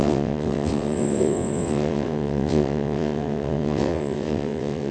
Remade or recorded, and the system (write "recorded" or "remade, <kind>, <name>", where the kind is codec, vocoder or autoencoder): remade, vocoder, WaveNeXt